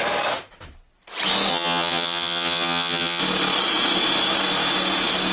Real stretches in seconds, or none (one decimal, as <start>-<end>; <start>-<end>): 0.0-1.5; 3.2-5.3